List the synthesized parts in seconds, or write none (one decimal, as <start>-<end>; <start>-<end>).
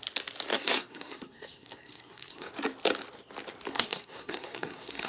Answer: 0.5-2.5; 3.7-5.1